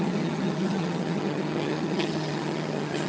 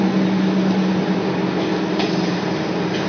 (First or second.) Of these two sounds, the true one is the second